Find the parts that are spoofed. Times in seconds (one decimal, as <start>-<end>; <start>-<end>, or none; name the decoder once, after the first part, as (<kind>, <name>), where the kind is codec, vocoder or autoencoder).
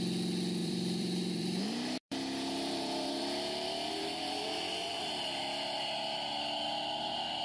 0.6-5.0 (vocoder, BigVGAN v2)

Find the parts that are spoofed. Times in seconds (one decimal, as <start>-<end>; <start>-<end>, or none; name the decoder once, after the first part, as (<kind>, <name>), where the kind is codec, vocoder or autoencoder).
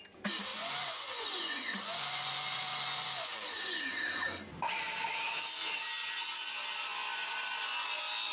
0.5-3.8 (vocoder, Vocos)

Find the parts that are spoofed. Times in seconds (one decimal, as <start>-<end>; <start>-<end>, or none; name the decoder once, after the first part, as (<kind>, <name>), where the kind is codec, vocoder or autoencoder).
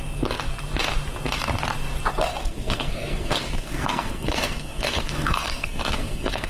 2.4-6.5 (codec, SNAC)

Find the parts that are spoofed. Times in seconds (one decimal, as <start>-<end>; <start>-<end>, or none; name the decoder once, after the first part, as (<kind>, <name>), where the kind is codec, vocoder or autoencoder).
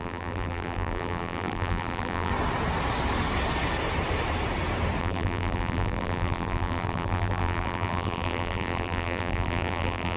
0.0-2.3 (vocoder, BigVGAN v2); 5.0-10.2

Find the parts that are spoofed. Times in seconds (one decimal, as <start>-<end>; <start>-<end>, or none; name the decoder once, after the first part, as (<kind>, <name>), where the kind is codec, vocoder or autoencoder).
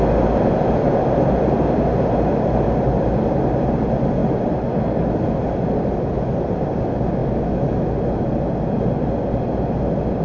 none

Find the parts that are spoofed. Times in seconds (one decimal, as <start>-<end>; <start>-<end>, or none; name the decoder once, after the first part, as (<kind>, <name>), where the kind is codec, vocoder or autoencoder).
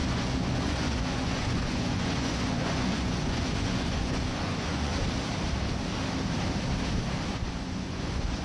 0.0-4.9 (vocoder, Vocos); 7.3-8.4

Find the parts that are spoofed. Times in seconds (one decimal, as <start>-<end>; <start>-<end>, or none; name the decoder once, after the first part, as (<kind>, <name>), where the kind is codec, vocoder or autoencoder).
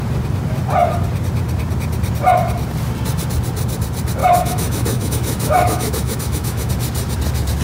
4.2-6.7 (autoencoder, DAC-VAE)